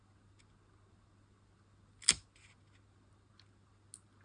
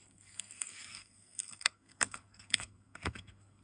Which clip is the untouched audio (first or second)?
first